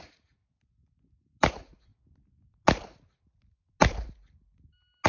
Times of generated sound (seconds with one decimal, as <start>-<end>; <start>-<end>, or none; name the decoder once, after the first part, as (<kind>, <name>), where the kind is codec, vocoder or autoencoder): 0.0-0.4 (vocoder, Vocos); 1.5-1.9